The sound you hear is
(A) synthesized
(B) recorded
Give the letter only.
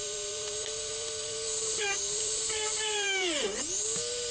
A